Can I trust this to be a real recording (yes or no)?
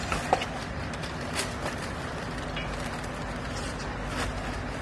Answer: yes